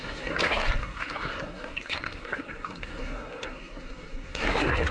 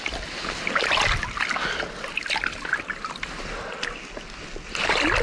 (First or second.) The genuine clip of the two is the second